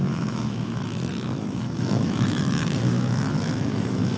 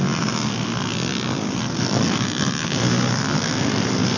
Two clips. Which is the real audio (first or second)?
second